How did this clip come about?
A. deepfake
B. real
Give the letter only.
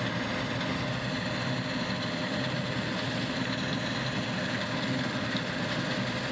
B